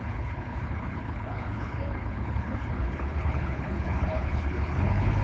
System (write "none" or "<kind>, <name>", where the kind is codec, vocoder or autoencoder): codec, HILCodec